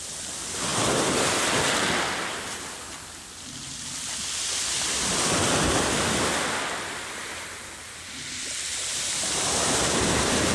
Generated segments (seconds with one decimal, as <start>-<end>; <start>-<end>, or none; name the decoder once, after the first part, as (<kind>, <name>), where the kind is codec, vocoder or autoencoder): 8.7-10.5 (vocoder, BigVGAN v2)